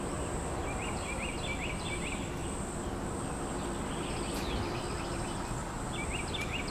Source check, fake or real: real